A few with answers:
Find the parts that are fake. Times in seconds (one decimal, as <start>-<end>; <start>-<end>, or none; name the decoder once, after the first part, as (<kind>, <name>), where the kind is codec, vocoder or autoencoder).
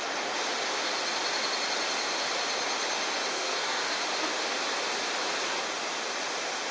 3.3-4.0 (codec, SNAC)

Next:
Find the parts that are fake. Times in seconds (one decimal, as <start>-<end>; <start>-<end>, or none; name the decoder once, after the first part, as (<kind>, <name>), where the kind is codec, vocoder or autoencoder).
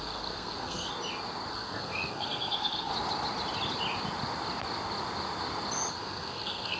0.0-0.9 (codec, SNAC); 1.5-2.9; 5.9-6.8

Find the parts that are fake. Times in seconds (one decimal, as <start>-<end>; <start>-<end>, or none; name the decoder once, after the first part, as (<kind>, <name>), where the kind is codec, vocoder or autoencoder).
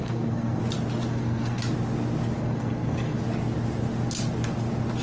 0.0-0.6 (codec, SNAC); 1.1-1.6; 2.4-3.2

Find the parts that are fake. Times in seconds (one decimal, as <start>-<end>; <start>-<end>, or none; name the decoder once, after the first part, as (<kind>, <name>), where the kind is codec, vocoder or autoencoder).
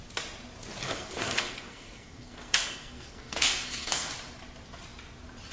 0.8-4.1 (codec, SNAC)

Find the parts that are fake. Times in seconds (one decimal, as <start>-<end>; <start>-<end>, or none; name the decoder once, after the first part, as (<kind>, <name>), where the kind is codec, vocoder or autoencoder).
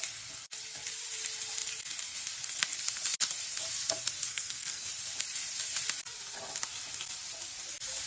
4.3-4.9 (codec, SNAC)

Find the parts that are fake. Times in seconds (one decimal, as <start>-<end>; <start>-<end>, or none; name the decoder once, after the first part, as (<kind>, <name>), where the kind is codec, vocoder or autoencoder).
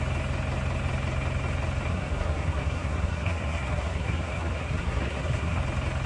1.9-5.6 (codec, SNAC)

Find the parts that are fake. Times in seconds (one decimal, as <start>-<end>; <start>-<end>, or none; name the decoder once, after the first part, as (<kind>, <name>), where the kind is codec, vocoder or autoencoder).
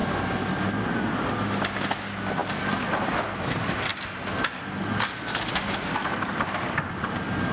none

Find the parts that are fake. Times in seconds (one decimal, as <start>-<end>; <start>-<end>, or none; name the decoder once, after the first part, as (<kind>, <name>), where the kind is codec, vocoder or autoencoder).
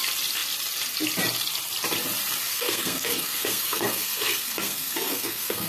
2.5-5.7 (codec, SNAC)